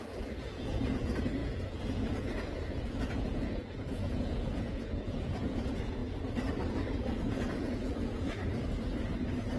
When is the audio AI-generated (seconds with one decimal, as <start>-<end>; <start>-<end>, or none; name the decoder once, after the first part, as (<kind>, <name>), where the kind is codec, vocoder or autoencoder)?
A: 0.0-6.0 (vocoder, Vocos); 7.1-8.4